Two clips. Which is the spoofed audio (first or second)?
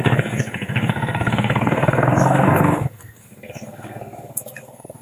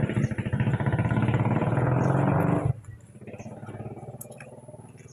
first